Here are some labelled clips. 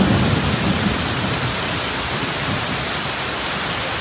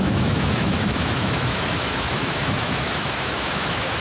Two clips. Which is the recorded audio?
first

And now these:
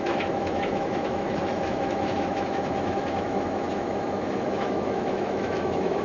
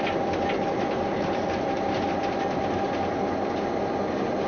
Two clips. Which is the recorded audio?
second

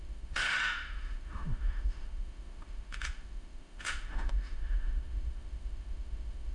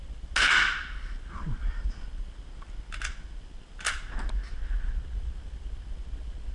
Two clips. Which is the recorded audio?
second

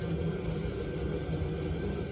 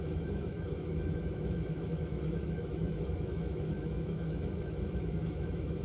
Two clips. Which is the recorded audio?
first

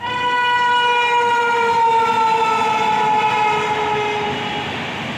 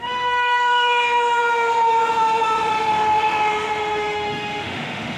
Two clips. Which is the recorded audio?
first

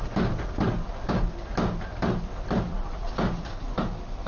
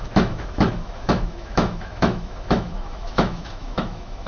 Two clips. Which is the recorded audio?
first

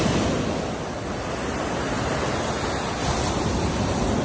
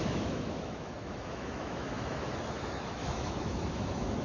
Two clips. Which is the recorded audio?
first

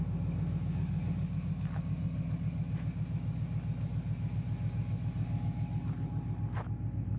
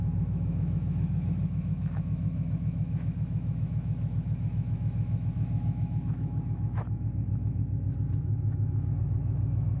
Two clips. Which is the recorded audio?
first